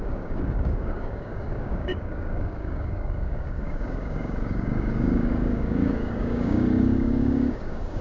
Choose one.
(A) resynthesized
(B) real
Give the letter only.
A